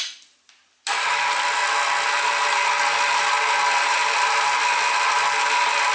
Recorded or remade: recorded